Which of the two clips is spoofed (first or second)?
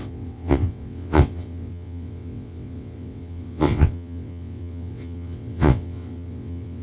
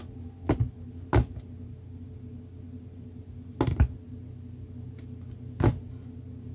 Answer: first